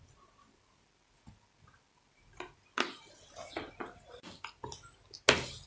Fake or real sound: real